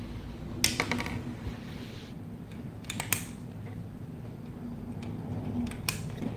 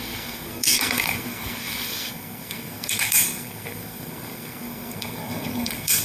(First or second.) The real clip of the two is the first